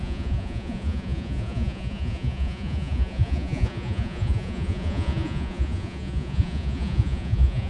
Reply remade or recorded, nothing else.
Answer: remade